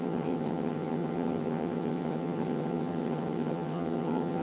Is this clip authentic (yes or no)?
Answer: no